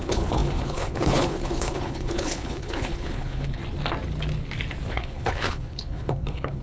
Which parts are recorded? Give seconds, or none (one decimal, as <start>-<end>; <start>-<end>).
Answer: 3.6-4.9